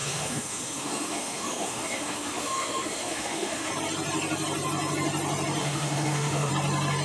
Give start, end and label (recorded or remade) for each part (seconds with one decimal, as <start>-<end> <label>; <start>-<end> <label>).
0.0-3.7 remade; 3.7-5.6 recorded; 5.6-6.5 remade; 6.5-7.0 recorded

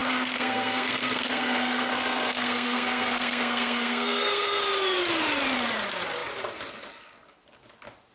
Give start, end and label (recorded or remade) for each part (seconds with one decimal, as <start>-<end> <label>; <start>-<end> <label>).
0.0-4.6 remade; 4.6-8.1 recorded

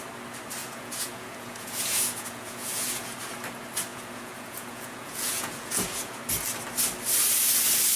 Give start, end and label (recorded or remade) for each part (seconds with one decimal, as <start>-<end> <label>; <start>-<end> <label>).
0.0-0.6 recorded; 0.6-3.2 remade; 3.2-3.9 recorded; 3.9-6.2 remade; 6.2-8.0 recorded